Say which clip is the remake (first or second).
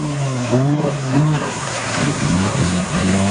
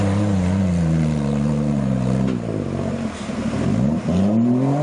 first